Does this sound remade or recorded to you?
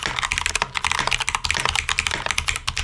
recorded